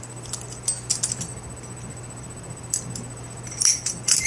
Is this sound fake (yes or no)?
no